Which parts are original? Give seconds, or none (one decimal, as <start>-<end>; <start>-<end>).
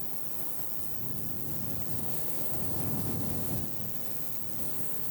0.0-1.9; 3.6-4.6